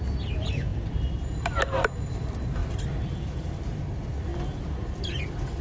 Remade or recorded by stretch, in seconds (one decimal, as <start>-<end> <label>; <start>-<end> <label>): 0.0-5.6 recorded